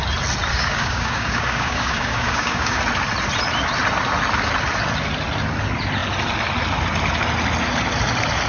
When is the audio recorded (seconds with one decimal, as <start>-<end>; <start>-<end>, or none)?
0.0-0.5; 2.8-8.5